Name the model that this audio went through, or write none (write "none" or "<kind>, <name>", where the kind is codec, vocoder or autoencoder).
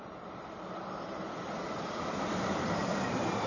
vocoder, BigVGAN v2